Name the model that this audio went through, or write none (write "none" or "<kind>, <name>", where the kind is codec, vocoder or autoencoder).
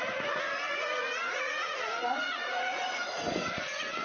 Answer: vocoder, Vocos